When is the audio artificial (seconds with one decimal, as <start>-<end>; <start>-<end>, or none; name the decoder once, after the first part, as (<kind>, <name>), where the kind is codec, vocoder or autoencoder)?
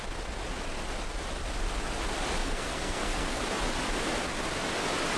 2.4-3.4 (codec, SNAC)